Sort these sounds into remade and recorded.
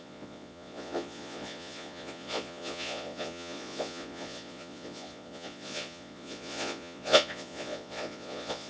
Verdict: remade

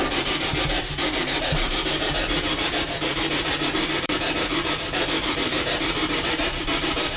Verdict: remade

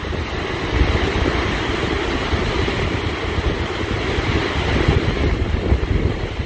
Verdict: recorded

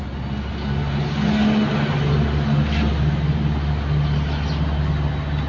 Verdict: recorded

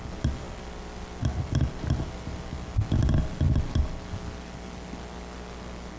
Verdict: recorded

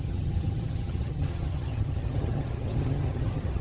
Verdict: remade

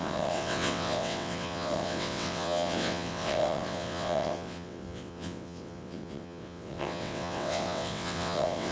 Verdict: remade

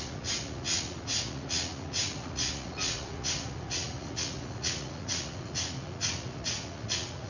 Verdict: remade